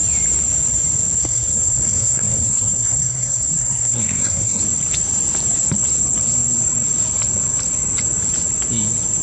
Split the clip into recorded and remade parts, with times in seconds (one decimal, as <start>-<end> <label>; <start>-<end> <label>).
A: 0.0-1.2 recorded; 1.2-4.6 remade; 4.6-9.2 recorded